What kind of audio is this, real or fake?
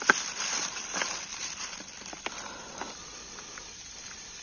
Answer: fake